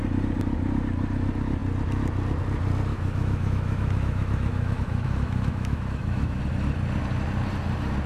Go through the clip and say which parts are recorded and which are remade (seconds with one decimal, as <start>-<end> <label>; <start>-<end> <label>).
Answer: 0.0-2.9 recorded; 2.9-6.4 remade; 6.4-8.1 recorded